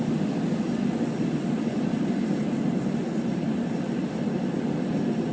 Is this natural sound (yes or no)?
yes